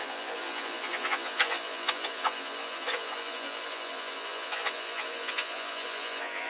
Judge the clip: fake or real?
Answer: fake